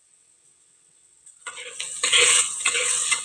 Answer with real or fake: fake